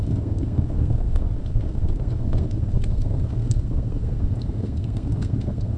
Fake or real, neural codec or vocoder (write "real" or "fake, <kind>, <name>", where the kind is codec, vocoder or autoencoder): fake, codec, SNAC